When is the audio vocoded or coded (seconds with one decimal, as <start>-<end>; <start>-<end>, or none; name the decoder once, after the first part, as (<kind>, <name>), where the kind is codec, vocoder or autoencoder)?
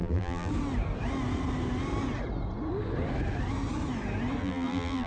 0.0-0.5 (vocoder, BigVGAN v2); 4.4-5.1